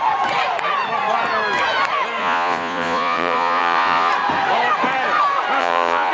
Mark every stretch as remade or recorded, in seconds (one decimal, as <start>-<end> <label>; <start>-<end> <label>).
0.0-2.2 recorded; 2.2-4.1 remade; 4.1-5.6 recorded; 5.6-6.1 remade